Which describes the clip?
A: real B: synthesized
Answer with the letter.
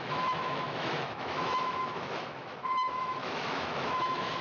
B